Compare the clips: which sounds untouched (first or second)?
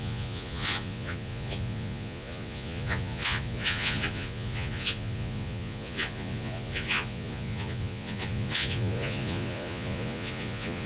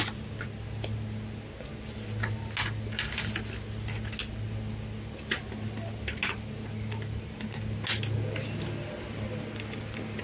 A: second